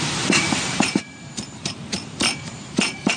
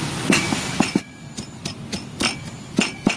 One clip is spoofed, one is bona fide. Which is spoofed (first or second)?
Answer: first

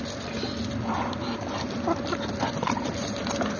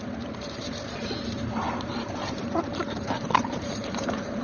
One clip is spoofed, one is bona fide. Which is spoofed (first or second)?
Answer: second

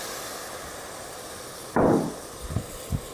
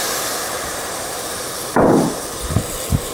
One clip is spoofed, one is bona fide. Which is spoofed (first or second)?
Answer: second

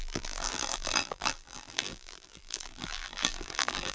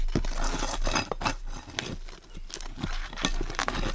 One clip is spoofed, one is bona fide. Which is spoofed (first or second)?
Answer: first